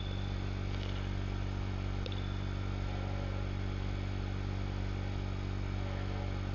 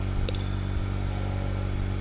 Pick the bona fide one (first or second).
first